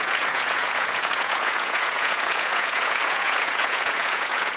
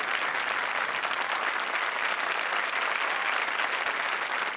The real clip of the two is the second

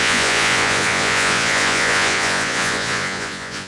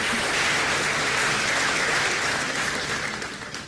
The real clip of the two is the second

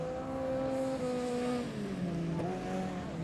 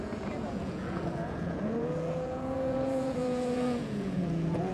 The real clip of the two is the first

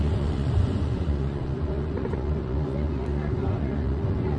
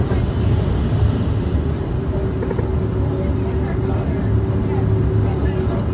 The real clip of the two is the second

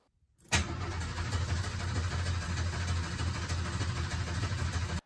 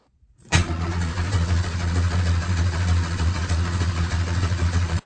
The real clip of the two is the first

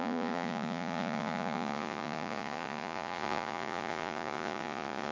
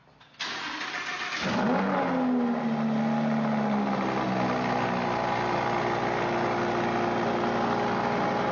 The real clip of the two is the second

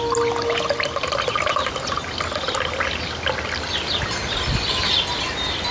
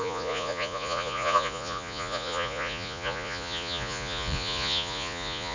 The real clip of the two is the first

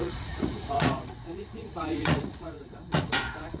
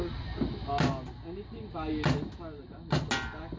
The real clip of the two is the second